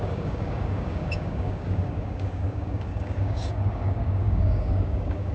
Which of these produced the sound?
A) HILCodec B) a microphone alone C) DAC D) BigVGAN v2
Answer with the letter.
C